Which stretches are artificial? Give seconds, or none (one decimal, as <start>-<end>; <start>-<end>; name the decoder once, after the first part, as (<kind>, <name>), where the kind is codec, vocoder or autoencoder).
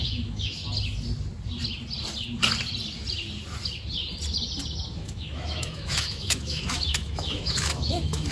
0.0-0.6 (autoencoder, DAC-VAE); 4.9-8.3